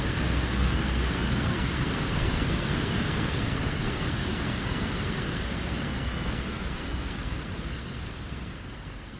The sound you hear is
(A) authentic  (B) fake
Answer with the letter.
B